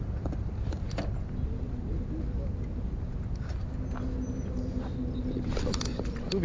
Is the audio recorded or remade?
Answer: recorded